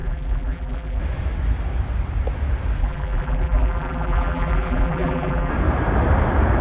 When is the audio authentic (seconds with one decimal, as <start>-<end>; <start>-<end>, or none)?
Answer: 1.0-2.8; 5.5-6.6